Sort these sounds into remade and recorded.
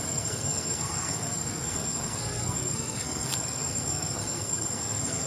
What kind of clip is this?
remade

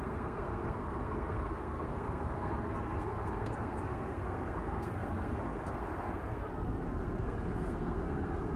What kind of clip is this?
remade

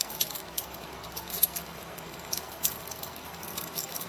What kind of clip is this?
remade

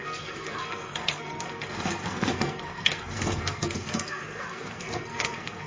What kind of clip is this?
remade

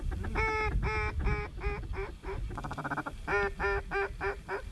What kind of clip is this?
recorded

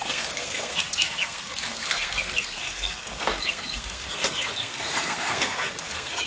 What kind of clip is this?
remade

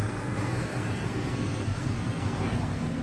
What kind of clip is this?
remade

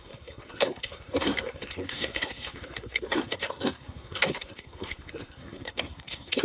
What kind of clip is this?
remade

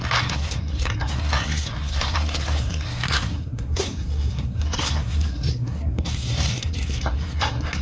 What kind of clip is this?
remade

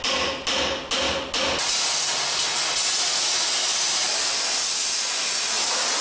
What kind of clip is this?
recorded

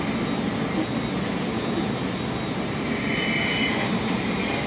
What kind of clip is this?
recorded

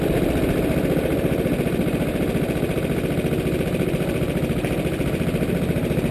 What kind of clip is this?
recorded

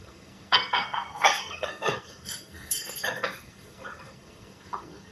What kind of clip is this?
remade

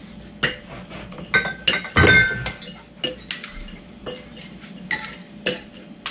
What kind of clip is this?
recorded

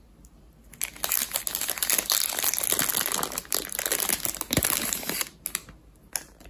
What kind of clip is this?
recorded